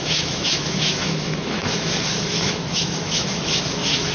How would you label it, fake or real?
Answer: fake